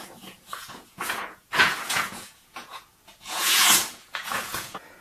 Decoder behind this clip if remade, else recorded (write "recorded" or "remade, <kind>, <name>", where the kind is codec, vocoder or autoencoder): remade, vocoder, Vocos